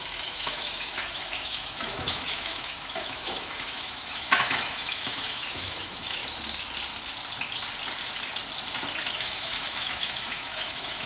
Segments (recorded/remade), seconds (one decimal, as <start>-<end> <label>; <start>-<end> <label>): 0.0-6.2 remade; 6.2-9.1 recorded; 9.1-11.1 remade